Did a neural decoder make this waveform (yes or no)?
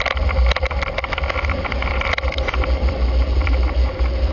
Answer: no